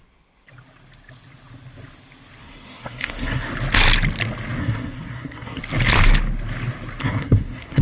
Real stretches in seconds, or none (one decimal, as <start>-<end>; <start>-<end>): 0.0-2.4; 3.5-4.6; 5.6-7.0